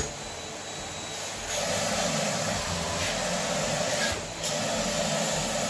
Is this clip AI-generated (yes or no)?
no